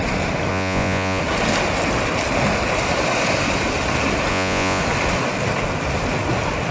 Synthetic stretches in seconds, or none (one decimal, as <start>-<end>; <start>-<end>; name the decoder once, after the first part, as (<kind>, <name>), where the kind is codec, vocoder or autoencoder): 0.5-1.2 (vocoder, Vocos); 4.3-4.8